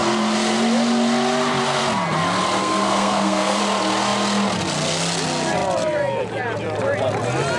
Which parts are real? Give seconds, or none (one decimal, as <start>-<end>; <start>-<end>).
0.0-2.6; 3.6-7.6